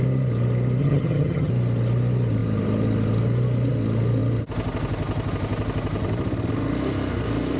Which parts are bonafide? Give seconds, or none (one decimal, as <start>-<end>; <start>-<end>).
0.0-0.8; 1.5-7.6